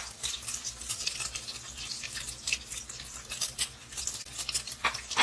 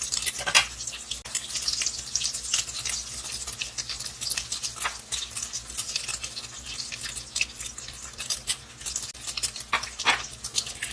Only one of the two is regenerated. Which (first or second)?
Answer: first